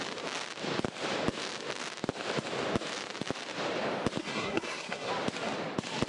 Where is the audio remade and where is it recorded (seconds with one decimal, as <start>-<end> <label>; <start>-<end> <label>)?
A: 0.0-4.2 recorded; 4.2-5.1 remade; 5.1-6.1 recorded